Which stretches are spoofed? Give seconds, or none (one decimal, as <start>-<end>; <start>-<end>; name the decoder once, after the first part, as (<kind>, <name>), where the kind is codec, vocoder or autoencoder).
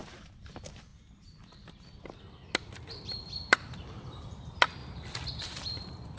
0.0-0.9 (vocoder, BigVGAN v2); 2.7-4.8; 5.4-6.2